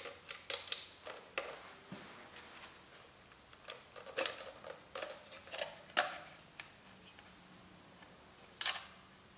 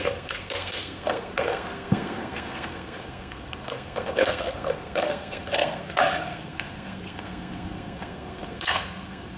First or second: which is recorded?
first